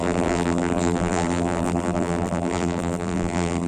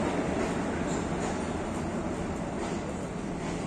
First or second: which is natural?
second